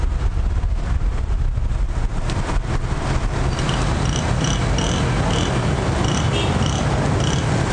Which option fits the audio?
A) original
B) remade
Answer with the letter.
A